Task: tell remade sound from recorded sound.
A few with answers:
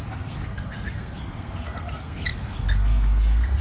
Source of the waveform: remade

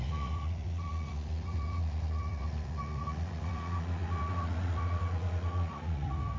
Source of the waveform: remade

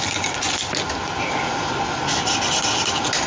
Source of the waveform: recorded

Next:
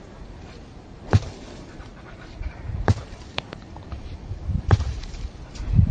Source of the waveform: remade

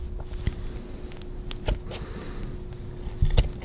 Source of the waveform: recorded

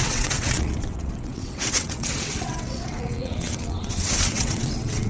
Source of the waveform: remade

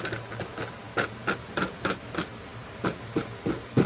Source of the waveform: recorded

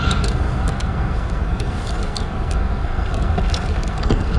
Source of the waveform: remade